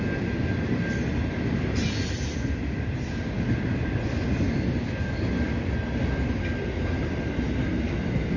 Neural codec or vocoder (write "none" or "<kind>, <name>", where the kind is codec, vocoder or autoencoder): none